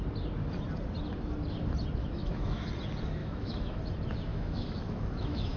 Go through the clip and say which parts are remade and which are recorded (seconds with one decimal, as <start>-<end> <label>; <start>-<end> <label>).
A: 0.0-2.0 recorded; 2.0-2.7 remade; 2.7-3.2 recorded; 3.2-3.8 remade; 3.8-4.3 recorded; 4.3-5.6 remade